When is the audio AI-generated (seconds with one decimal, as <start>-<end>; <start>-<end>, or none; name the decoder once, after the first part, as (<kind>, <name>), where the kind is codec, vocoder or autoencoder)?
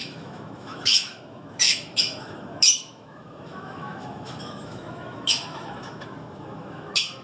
0.0-7.2 (autoencoder, DAC-VAE)